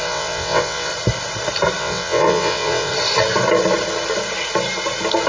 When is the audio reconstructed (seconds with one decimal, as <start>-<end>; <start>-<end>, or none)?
0.0-0.9; 1.8-2.9